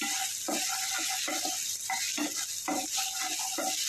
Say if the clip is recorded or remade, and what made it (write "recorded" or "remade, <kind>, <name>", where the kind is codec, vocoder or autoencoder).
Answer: recorded